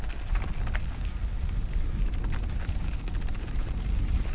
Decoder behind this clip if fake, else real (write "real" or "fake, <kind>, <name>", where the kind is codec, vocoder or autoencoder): real